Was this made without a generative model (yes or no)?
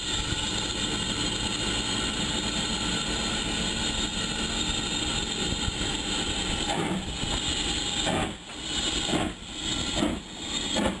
yes